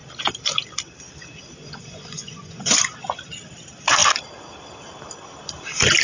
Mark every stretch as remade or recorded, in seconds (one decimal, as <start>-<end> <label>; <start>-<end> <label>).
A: 0.0-1.6 recorded; 1.6-2.8 remade; 2.8-6.0 recorded